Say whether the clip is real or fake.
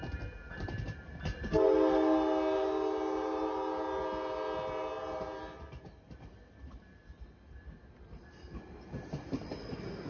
real